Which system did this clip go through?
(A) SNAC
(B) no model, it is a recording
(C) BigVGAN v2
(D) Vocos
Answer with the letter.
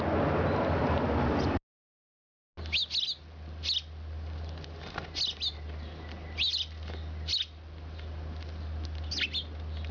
B